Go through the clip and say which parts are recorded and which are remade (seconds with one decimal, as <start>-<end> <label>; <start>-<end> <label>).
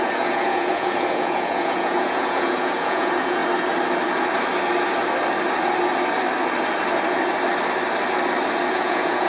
0.0-3.4 remade; 3.4-8.7 recorded; 8.7-9.3 remade